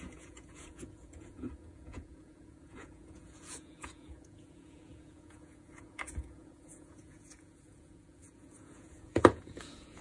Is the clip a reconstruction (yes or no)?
yes